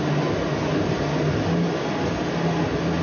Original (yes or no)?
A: yes